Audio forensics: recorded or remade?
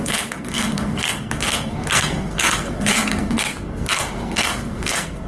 remade